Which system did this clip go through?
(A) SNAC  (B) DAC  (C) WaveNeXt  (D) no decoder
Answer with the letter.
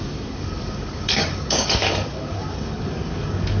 B